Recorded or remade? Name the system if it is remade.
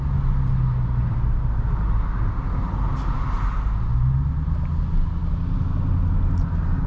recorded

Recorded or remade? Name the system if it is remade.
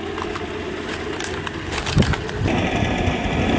recorded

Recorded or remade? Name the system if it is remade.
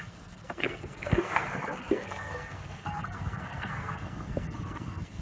remade, codec, SNAC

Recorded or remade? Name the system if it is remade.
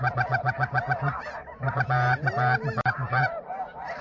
recorded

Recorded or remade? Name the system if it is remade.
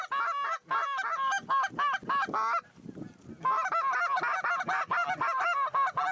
recorded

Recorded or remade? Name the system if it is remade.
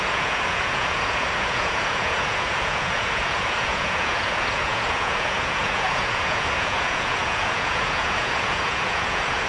remade, vocoder, Vocos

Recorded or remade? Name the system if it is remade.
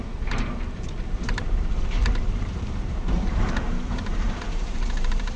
remade, vocoder, BigVGAN v2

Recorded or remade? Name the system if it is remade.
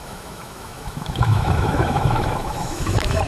remade, autoencoder, DAC-VAE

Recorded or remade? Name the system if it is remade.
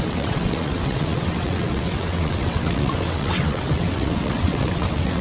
remade, vocoder, WaveNeXt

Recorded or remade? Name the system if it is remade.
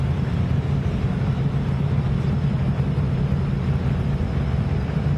recorded